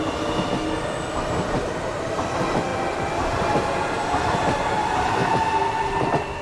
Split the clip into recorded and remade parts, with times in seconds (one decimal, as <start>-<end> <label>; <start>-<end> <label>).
0.0-6.4 recorded